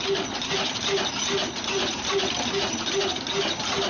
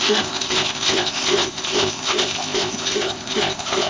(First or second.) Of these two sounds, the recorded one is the first